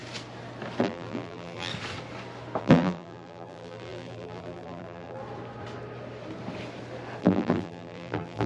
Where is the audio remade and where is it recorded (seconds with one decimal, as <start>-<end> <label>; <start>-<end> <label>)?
0.0-0.8 recorded; 0.8-1.7 remade; 1.7-2.6 recorded; 2.6-5.2 remade; 5.2-7.2 recorded; 7.2-8.5 remade